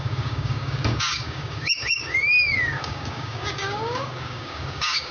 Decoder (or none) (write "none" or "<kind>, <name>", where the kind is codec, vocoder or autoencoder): codec, DAC